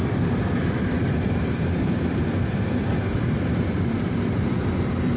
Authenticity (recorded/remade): remade